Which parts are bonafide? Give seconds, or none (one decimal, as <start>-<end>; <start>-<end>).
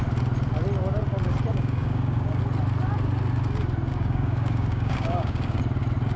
0.0-1.5; 2.4-3.9; 5.6-6.2